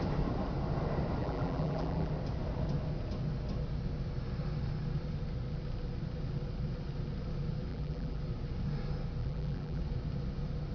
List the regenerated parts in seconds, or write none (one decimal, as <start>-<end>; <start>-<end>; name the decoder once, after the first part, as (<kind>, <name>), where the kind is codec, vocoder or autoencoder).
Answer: 1.2-2.1 (vocoder, BigVGAN v2); 7.7-8.2; 9.2-9.8